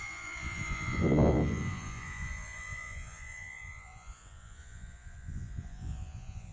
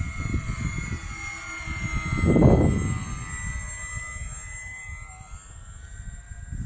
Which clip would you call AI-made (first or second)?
first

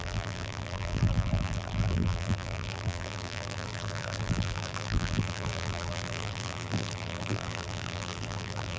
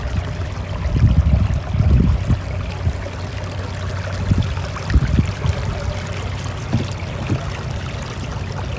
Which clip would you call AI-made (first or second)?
first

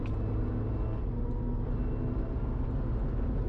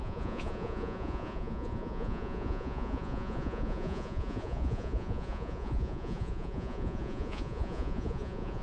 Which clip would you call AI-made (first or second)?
second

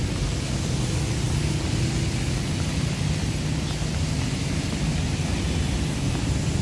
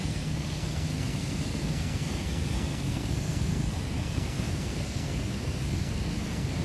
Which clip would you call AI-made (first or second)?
second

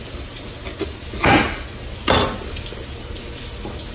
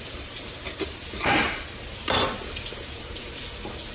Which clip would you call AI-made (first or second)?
second